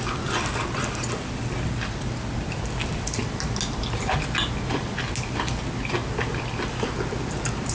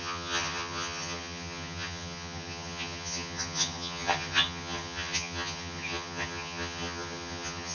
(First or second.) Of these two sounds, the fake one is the second